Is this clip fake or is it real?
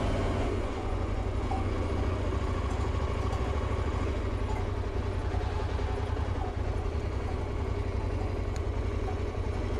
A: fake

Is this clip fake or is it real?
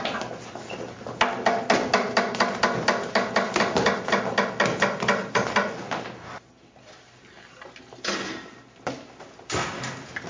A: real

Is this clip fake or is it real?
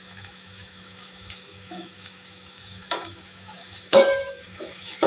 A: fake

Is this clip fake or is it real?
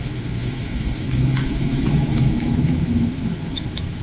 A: fake